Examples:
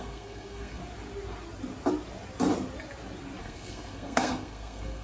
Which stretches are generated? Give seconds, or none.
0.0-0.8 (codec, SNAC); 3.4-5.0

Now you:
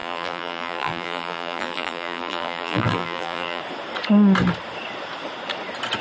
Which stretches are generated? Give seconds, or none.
0.0-3.6 (vocoder, BigVGAN v2)

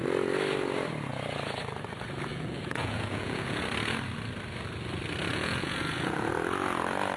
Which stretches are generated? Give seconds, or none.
2.3-3.6 (vocoder, Vocos); 5.3-6.3

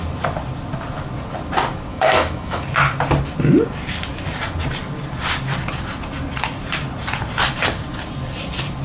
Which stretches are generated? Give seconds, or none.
1.9-2.6 (autoencoder, DAC-VAE)

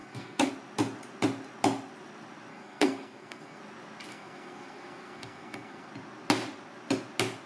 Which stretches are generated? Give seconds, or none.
0.0-0.5 (codec, SNAC); 2.5-3.6; 4.1-5.9